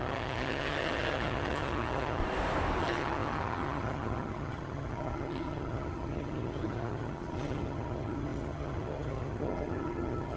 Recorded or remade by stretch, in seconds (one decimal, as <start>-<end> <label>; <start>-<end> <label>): 0.0-2.2 remade; 2.2-2.8 recorded; 2.8-10.4 remade